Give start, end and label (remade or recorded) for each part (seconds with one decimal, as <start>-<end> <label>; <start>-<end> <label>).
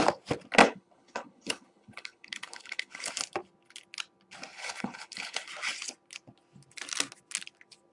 0.0-0.6 recorded; 0.6-3.1 remade; 3.1-4.5 recorded; 4.5-5.5 remade; 5.5-7.9 recorded